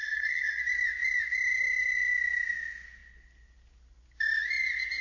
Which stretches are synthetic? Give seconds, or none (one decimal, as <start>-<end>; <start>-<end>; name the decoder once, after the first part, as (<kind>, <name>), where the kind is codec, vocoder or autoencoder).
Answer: 0.0-0.6 (codec, SNAC)